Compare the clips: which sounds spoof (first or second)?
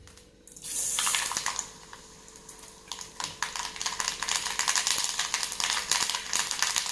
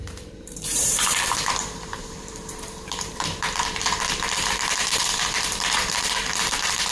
second